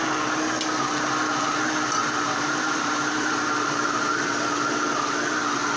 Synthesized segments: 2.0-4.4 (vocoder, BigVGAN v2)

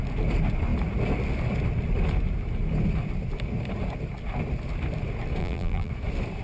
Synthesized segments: 5.4-5.9 (vocoder, BigVGAN v2)

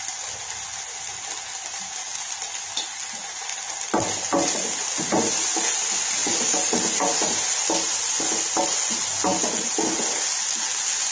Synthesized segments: 6.2-8.1 (vocoder, BigVGAN v2)

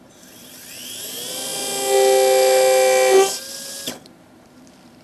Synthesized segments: 0.0-1.5 (vocoder, BigVGAN v2); 3.5-5.0

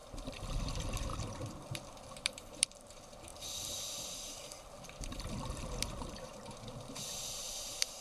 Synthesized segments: 0.0-0.6 (vocoder, BigVGAN v2); 1.1-2.9; 3.3-8.0

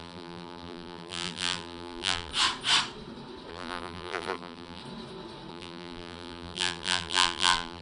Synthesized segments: 0.0-2.3 (vocoder, BigVGAN v2); 3.5-4.8; 5.5-7.8

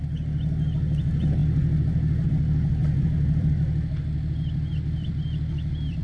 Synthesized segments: 2.8-6.0 (vocoder, BigVGAN v2)